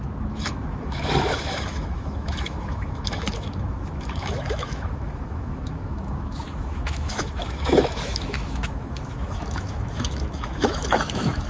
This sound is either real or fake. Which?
fake